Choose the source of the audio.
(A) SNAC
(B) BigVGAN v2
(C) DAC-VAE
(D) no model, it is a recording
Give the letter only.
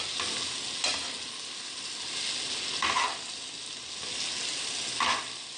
D